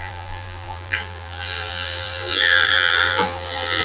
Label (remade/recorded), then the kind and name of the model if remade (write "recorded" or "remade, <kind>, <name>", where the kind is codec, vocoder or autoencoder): remade, vocoder, BigVGAN v2